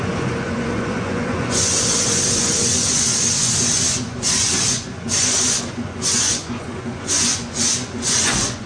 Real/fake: fake